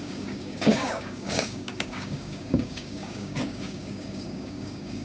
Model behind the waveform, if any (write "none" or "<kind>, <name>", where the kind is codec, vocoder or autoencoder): codec, DAC